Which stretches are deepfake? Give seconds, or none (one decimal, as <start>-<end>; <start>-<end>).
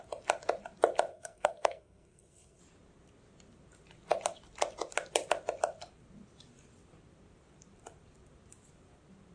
1.1-2.6